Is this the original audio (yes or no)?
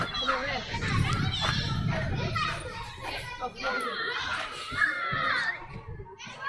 yes